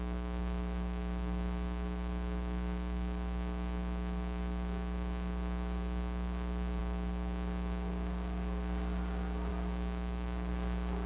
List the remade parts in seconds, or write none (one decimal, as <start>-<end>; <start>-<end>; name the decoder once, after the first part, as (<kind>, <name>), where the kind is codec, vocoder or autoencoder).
0.0-11.1 (codec, DAC)